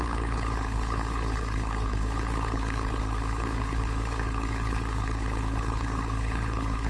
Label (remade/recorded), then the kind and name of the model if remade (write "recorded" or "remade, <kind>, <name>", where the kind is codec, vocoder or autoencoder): remade, codec, HILCodec